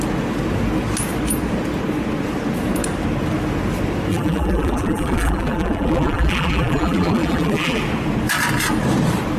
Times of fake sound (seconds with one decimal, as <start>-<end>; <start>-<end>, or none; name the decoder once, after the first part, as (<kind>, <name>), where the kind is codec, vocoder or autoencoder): 4.1-7.8 (vocoder, BigVGAN v2)